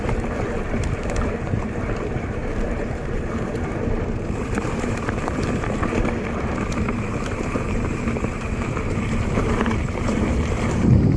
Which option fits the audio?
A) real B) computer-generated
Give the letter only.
B